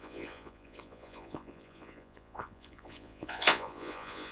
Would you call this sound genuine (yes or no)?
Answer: no